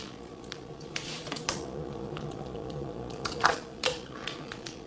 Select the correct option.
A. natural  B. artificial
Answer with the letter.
B